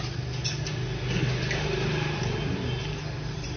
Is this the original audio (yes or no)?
yes